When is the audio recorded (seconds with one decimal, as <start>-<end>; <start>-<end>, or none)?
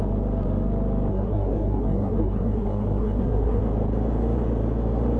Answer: 0.0-1.1; 3.6-5.2